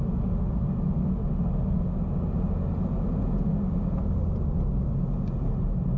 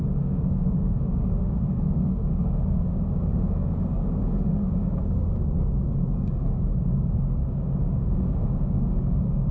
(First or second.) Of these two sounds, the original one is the first